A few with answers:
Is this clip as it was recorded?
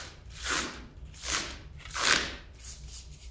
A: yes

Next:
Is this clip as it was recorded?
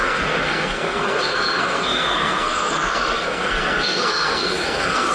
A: no